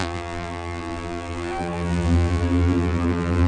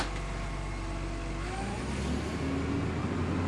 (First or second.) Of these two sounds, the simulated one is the first